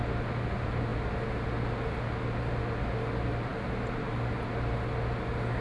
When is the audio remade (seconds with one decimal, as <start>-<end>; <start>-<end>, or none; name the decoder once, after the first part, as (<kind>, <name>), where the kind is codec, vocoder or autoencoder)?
none